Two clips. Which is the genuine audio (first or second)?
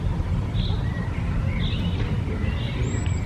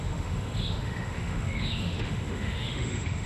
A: first